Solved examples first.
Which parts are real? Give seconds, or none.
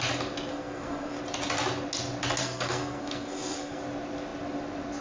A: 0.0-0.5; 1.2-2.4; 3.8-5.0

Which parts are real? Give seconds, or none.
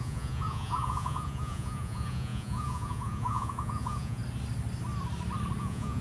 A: 4.2-5.6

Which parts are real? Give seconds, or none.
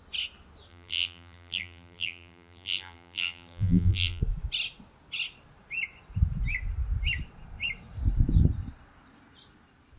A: 0.0-0.7; 4.2-10.0